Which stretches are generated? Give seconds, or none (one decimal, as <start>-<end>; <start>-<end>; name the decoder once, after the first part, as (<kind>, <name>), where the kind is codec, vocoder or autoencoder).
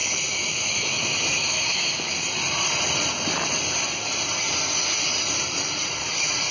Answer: 0.0-2.2 (autoencoder, DAC-VAE)